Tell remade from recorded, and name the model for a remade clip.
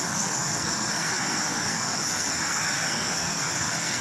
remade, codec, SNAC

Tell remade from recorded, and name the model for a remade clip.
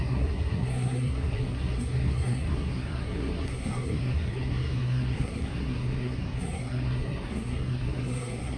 remade, codec, SNAC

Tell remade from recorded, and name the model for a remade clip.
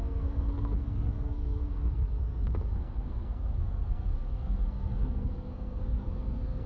remade, codec, SNAC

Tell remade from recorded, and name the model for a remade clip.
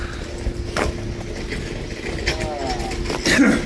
recorded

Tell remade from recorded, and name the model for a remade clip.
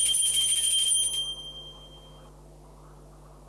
recorded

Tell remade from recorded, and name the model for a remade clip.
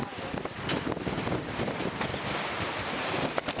recorded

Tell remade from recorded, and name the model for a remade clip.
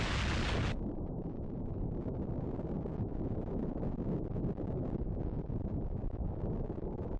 recorded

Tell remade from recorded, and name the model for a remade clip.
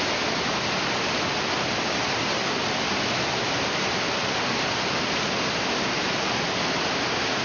recorded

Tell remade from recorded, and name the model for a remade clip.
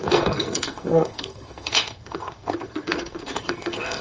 remade, codec, SNAC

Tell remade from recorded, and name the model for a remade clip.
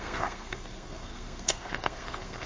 remade, codec, SNAC